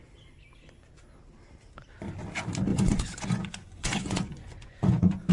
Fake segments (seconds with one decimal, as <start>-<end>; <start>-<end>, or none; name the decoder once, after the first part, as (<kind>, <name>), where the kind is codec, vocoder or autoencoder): 2.7-5.3 (vocoder, Vocos)